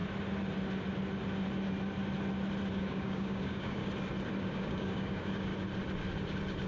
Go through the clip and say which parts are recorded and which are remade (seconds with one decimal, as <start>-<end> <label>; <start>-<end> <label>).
0.0-2.7 recorded; 2.7-3.8 remade; 3.8-4.4 recorded; 4.4-5.5 remade; 5.5-6.7 recorded